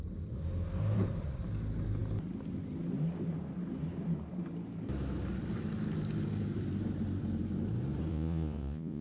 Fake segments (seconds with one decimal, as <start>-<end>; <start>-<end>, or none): 8.1-9.0